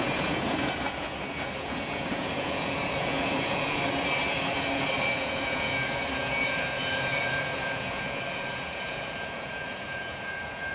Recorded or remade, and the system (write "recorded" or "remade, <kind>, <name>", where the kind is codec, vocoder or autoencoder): remade, vocoder, Vocos